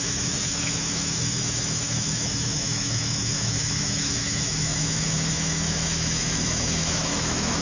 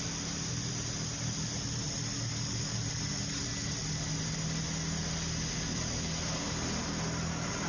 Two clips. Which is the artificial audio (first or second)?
first